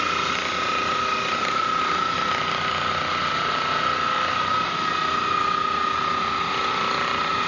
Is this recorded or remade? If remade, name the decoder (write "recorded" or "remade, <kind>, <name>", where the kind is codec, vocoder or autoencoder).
recorded